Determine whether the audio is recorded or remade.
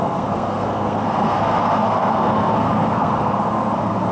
remade